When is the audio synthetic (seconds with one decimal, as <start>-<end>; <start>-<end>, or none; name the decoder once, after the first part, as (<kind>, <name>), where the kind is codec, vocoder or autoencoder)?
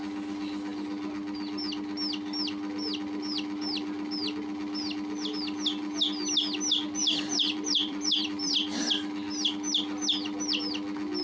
7.0-8.8 (vocoder, BigVGAN v2)